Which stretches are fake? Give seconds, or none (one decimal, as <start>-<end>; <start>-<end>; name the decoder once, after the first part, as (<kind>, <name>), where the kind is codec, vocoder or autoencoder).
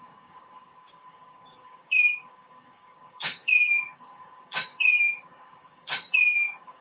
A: 0.0-6.8 (codec, DAC)